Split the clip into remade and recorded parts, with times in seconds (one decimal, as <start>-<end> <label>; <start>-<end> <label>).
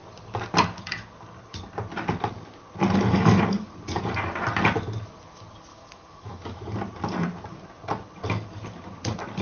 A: 0.0-5.7 recorded; 5.7-6.6 remade; 6.6-9.4 recorded